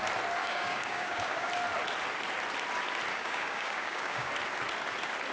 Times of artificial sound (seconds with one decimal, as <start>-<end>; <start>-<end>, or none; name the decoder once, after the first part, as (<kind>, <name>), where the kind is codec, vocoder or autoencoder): 0.4-1.5 (codec, DAC); 3.1-4.3